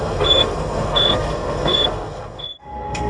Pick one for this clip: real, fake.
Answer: fake